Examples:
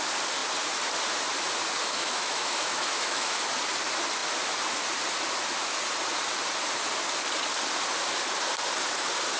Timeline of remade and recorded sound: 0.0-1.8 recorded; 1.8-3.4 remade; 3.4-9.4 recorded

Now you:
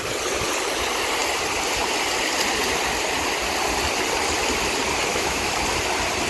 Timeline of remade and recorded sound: 0.0-5.1 recorded; 5.1-5.6 remade; 5.6-6.3 recorded

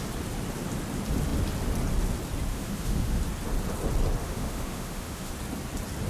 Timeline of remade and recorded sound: 0.0-2.5 recorded; 2.5-3.2 remade; 3.2-4.2 recorded; 4.2-5.3 remade; 5.3-6.1 recorded

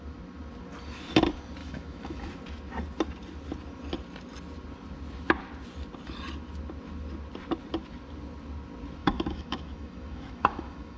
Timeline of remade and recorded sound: 0.0-1.6 recorded; 1.6-2.3 remade; 2.3-9.0 recorded; 9.0-11.0 remade

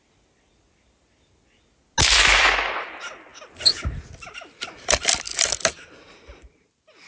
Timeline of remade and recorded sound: 0.0-7.1 recorded

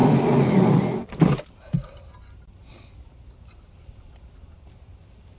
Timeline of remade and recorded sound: 0.0-5.4 recorded

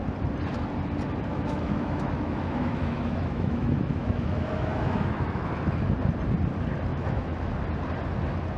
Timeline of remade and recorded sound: 0.0-1.3 recorded; 1.3-5.5 remade; 5.5-6.9 recorded; 6.9-7.5 remade; 7.5-8.6 recorded